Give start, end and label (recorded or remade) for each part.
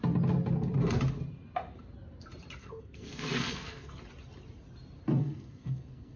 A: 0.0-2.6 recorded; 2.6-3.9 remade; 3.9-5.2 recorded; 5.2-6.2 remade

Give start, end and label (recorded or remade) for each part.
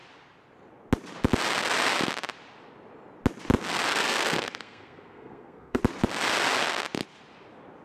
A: 0.0-3.9 recorded; 3.9-5.8 remade; 5.8-7.8 recorded